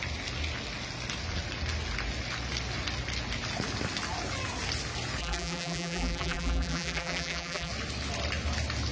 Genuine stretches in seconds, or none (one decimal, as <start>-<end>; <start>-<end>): 0.0-5.2; 7.7-8.9